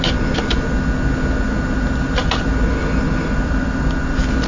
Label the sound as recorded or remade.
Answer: recorded